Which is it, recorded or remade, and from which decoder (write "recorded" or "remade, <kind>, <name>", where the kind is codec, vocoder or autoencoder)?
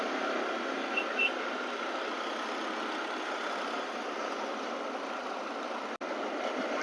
recorded